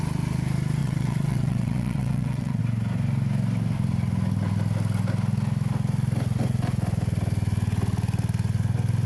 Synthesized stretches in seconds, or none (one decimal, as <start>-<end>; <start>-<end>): 0.8-2.6